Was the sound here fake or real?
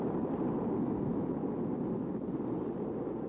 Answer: real